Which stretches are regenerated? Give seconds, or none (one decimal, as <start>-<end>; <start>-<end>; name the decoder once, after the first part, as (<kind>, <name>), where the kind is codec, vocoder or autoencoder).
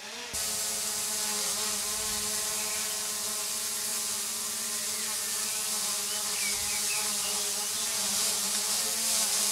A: none